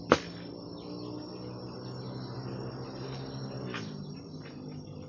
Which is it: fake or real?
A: real